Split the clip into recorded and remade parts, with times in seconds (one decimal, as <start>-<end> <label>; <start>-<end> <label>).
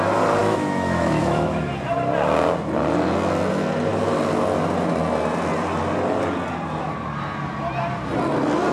0.0-0.4 recorded; 0.4-1.7 remade; 1.7-8.7 recorded